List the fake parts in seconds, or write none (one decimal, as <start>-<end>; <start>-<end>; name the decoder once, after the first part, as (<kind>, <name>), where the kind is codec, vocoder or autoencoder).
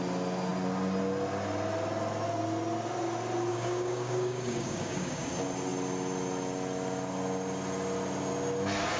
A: 3.5-5.3 (codec, DAC)